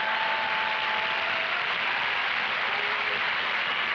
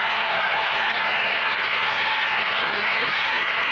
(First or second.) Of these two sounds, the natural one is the first